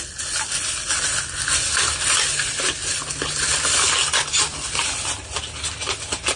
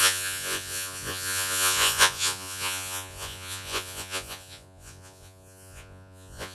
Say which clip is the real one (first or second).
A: first